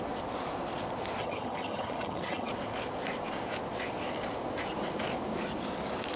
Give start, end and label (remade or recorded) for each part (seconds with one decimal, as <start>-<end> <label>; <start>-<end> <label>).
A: 0.0-1.2 recorded; 1.2-2.5 remade; 2.5-6.2 recorded